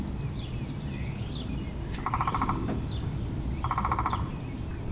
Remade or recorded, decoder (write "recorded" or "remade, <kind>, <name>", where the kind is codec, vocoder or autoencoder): recorded